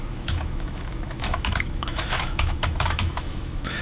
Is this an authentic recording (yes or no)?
no